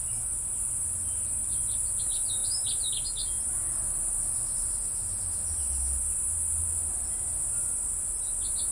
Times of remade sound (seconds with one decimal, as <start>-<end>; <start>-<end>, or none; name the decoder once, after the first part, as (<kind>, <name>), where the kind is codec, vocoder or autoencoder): 1.4-2.0 (vocoder, BigVGAN v2); 6.6-7.3